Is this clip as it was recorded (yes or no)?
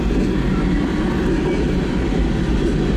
yes